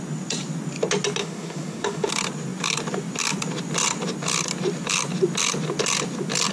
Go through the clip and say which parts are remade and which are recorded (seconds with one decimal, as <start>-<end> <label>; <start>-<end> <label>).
0.0-1.2 recorded; 1.2-2.1 remade; 2.1-6.5 recorded